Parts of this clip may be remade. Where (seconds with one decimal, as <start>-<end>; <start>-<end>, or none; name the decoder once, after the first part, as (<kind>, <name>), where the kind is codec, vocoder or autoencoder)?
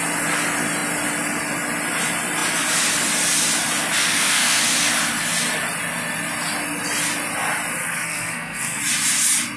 4.0-4.6 (codec, SNAC); 7.8-8.8